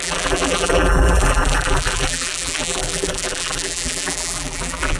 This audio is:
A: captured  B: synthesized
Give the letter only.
B